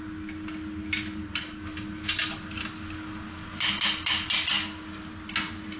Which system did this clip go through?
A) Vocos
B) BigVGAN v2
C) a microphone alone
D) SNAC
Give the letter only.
C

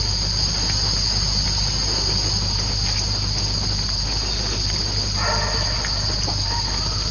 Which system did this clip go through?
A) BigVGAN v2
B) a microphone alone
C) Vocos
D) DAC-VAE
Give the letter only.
B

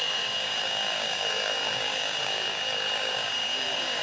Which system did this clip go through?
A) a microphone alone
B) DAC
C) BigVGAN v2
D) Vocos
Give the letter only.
B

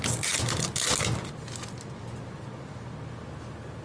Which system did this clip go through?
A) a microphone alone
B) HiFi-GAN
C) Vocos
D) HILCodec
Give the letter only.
A